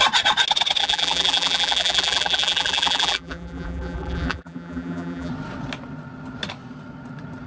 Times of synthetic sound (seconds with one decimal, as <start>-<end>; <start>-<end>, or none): 0.8-5.3